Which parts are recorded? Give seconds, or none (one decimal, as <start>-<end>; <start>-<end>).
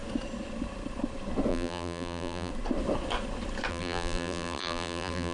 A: 0.0-1.5; 2.5-3.7